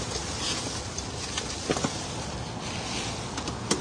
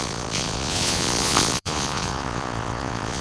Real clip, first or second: first